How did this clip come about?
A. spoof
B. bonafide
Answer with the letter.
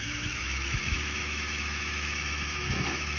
A